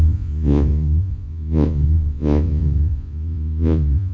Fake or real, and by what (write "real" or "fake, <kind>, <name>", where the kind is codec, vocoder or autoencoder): fake, vocoder, Vocos